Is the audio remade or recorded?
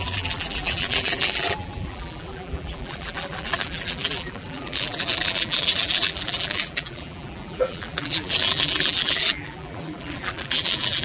remade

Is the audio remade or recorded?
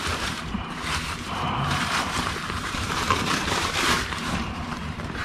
remade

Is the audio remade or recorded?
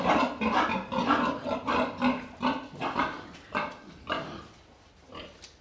recorded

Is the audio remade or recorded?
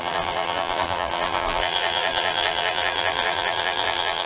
remade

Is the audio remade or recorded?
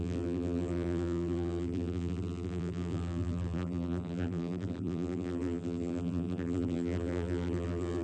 remade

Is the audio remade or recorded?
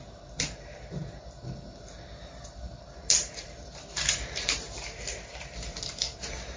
remade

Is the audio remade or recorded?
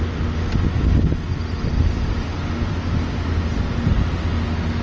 recorded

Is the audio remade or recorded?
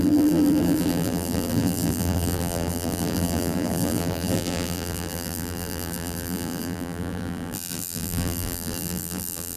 remade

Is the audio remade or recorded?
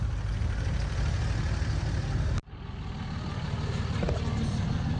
remade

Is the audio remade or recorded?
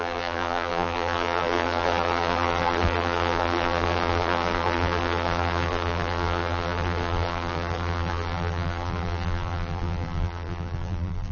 remade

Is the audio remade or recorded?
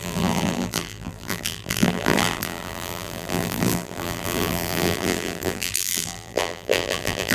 remade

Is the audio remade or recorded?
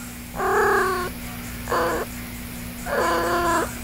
recorded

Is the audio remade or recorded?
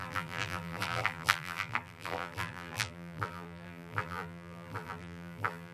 remade